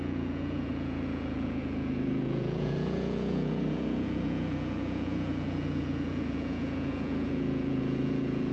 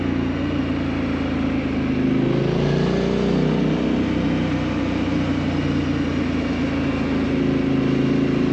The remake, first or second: first